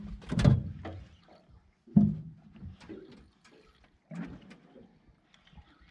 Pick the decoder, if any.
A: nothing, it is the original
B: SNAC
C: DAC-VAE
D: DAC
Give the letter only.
A